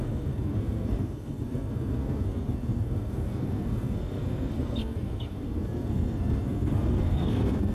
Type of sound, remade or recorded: remade